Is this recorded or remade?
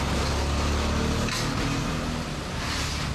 recorded